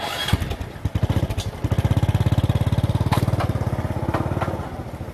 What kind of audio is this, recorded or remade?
recorded